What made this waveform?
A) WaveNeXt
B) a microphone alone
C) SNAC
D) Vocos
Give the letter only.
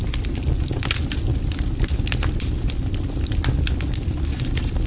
B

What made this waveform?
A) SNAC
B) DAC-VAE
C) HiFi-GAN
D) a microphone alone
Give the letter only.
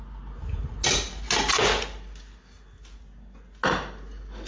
D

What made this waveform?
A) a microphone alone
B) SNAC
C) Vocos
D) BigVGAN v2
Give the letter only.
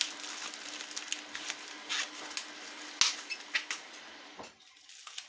A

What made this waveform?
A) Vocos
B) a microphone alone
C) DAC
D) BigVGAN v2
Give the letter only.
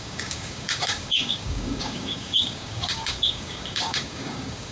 C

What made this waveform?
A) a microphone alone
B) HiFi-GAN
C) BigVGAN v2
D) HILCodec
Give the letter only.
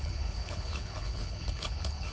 D